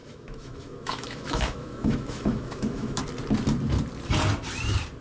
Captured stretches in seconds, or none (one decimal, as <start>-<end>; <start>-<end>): 3.0-5.0